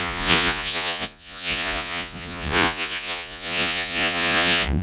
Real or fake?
fake